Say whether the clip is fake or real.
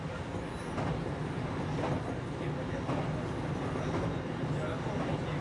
real